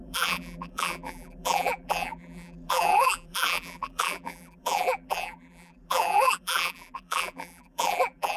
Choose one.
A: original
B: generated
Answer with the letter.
B